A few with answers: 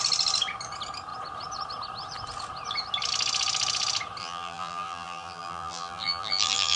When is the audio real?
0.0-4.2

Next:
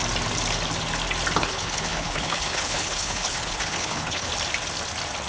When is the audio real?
0.0-1.4; 4.3-5.3

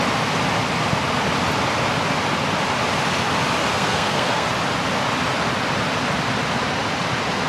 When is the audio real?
0.0-3.7; 4.5-7.5

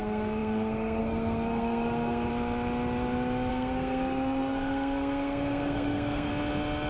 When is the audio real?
2.3-3.5; 6.3-6.9

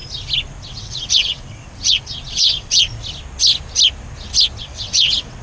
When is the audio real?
0.0-0.6; 2.9-4.6

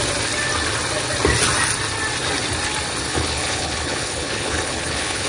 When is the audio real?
0.0-3.1